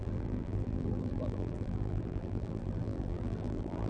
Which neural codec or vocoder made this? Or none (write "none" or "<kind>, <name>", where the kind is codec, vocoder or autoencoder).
vocoder, BigVGAN v2